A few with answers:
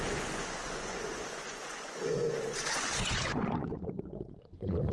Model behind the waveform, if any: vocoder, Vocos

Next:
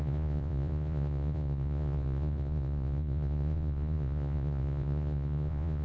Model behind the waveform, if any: vocoder, Vocos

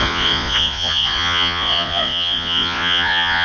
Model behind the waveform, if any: vocoder, Vocos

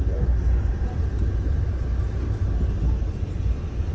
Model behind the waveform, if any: none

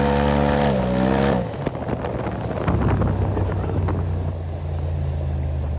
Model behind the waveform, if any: none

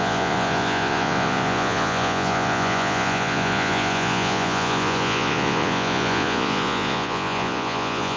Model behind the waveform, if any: vocoder, Vocos